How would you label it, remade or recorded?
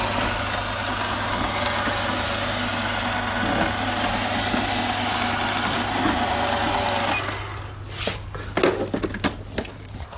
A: recorded